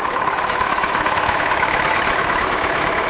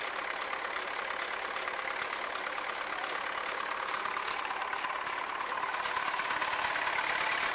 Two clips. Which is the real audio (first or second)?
second